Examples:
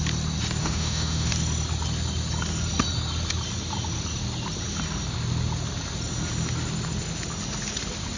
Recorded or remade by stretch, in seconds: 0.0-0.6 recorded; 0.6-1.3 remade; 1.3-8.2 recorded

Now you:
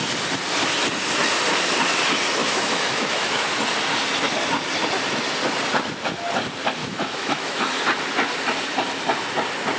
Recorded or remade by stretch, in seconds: 0.0-2.4 recorded; 2.4-3.5 remade; 3.5-6.8 recorded; 6.8-7.8 remade; 7.8-9.8 recorded

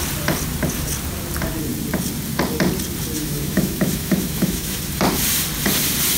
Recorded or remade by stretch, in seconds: 0.0-3.2 recorded; 3.2-4.8 remade; 4.8-6.2 recorded

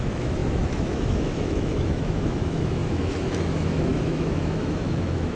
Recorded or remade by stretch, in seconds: 0.0-5.3 remade

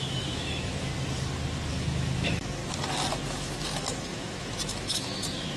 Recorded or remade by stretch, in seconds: 0.0-0.9 remade; 0.9-1.7 recorded; 1.7-2.6 remade; 2.6-3.1 recorded; 3.1-5.6 remade

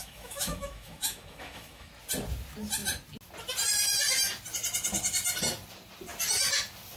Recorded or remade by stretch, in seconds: 0.0-1.9 remade; 1.9-7.0 recorded

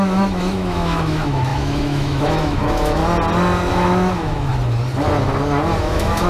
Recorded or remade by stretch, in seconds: 0.0-3.0 remade; 3.0-3.7 recorded; 3.7-4.5 remade; 4.5-5.8 recorded; 5.8-6.3 remade

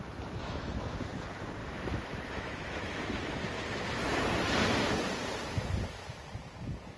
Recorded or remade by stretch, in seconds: 0.0-0.4 recorded; 0.4-1.0 remade; 1.0-1.6 recorded; 1.6-3.4 remade; 3.4-7.0 recorded